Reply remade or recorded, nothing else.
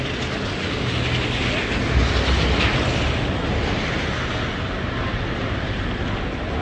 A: recorded